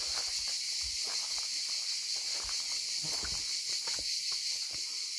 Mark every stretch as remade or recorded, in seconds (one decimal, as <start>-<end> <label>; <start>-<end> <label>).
0.0-5.2 recorded

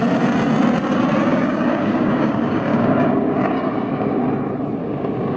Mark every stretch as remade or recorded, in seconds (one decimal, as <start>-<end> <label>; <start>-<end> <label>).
0.0-1.3 recorded; 1.3-4.2 remade; 4.2-4.8 recorded; 4.8-5.4 remade

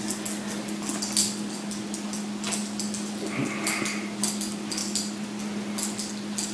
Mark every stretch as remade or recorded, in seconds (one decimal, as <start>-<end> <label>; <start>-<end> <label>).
0.0-6.5 recorded

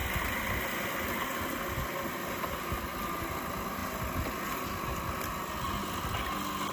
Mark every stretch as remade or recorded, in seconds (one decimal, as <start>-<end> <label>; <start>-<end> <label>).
0.0-6.7 recorded